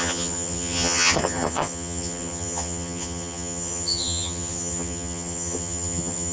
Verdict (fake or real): fake